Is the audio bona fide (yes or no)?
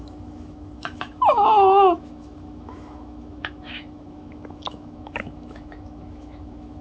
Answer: no